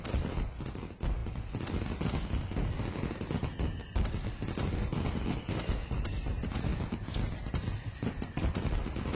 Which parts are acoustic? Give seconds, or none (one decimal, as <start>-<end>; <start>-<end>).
0.0-9.2

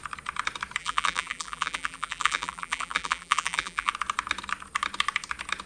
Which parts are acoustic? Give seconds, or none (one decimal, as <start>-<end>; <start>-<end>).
0.0-0.8; 3.9-5.7

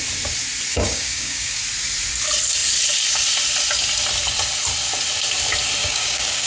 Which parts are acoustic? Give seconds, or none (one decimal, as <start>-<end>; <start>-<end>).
0.0-0.7; 1.6-5.8

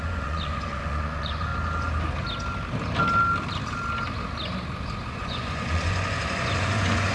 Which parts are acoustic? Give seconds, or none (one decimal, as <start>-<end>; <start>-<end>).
1.5-5.1

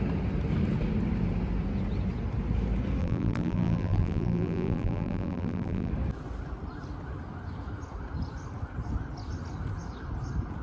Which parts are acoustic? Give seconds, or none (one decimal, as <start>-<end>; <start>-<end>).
0.0-3.0; 5.9-10.6

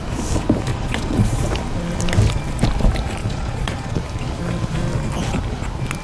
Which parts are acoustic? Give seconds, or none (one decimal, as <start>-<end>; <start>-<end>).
0.0-0.7; 1.5-3.2; 4.0-6.0

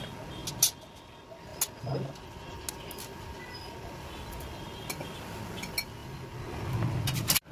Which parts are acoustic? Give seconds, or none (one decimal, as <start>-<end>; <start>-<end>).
0.0-7.5

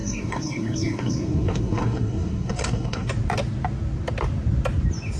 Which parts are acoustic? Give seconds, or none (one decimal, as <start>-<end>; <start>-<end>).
3.1-5.2